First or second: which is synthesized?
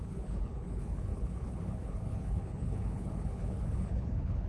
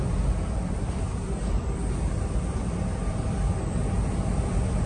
first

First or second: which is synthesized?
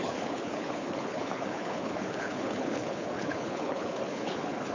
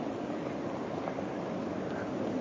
first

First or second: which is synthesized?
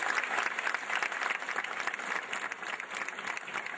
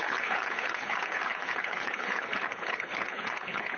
second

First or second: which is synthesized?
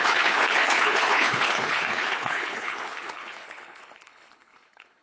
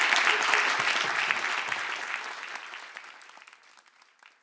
first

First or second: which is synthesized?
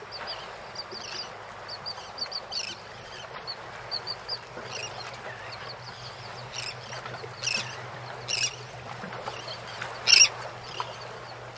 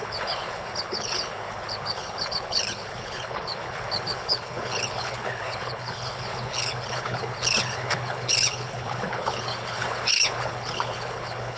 second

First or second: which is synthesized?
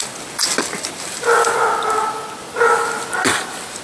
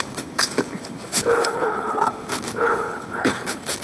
second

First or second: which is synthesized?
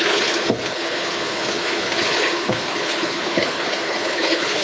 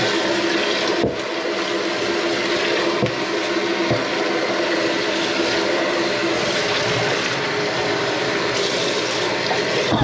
first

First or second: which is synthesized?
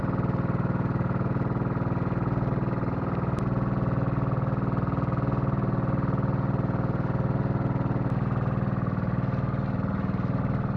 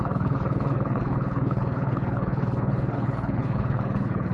second